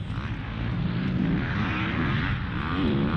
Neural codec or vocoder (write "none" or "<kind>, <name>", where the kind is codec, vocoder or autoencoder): none